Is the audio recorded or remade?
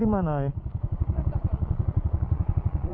remade